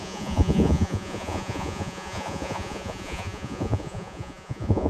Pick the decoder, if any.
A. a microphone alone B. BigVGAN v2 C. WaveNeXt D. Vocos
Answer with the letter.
D